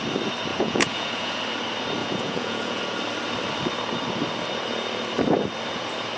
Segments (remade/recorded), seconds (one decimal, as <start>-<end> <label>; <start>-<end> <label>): 0.0-0.5 recorded; 0.5-1.4 remade; 1.4-2.0 recorded; 2.0-2.8 remade; 2.8-6.2 recorded